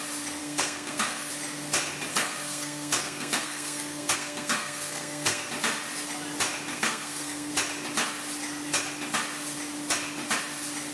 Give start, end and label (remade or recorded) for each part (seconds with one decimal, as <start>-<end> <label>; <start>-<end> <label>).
0.0-0.4 recorded; 0.4-1.3 remade; 1.3-2.1 recorded; 2.1-5.5 remade; 5.5-6.7 recorded; 6.7-7.5 remade; 7.5-10.9 recorded